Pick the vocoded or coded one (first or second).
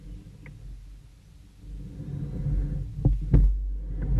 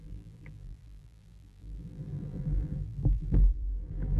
second